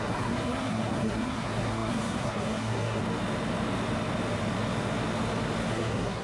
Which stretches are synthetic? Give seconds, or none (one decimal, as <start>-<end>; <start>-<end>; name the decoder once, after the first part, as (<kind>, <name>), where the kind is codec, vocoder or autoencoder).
0.0-3.0 (codec, SNAC); 5.7-6.2